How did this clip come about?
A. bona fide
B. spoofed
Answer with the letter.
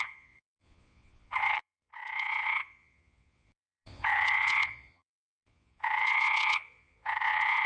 B